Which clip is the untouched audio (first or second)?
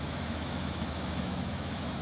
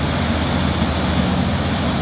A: second